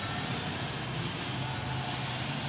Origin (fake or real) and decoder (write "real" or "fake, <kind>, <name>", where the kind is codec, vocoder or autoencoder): real